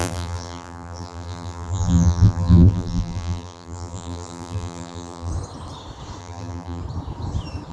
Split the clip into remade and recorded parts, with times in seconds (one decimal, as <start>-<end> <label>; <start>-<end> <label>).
0.0-5.3 remade; 5.3-6.2 recorded; 6.2-6.8 remade; 6.8-7.7 recorded